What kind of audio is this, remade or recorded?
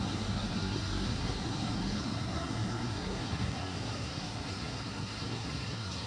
remade